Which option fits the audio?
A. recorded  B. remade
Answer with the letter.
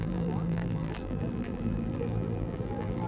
B